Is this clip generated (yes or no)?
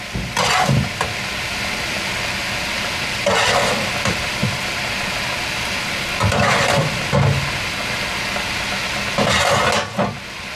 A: no